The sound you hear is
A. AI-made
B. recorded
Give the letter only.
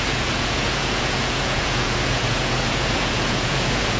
A